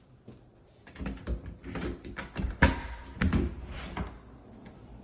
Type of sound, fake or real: fake